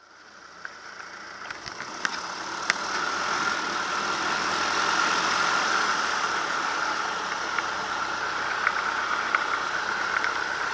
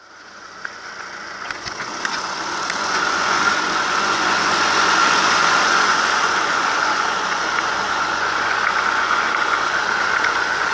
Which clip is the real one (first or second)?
first